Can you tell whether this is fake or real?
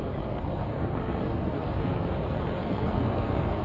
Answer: fake